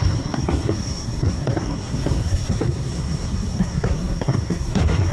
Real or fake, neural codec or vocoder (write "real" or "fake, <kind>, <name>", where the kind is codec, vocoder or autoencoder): fake, codec, SNAC